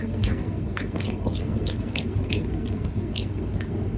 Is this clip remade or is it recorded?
remade